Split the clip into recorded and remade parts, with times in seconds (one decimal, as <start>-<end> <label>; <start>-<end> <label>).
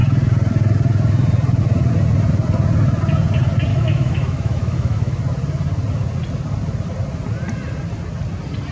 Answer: 0.0-3.7 recorded; 3.7-5.2 remade; 5.2-8.7 recorded